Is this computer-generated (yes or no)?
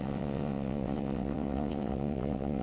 yes